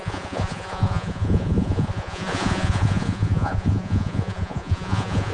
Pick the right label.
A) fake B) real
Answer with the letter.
A